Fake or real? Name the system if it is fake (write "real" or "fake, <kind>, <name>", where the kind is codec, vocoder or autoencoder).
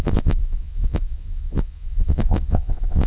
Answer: fake, vocoder, Vocos